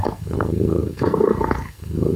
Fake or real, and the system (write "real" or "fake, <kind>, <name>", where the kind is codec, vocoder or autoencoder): fake, codec, SNAC